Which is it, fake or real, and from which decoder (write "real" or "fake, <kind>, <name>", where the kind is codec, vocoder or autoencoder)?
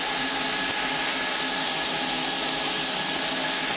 real